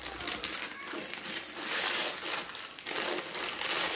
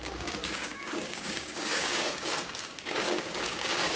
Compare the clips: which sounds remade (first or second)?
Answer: second